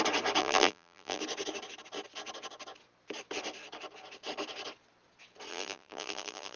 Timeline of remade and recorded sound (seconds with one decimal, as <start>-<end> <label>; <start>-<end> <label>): 0.0-0.4 recorded; 0.4-1.2 remade; 1.2-5.5 recorded; 5.5-6.6 remade